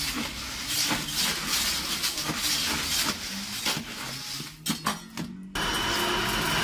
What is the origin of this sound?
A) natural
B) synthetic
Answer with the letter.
A